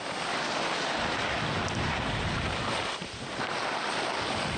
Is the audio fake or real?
real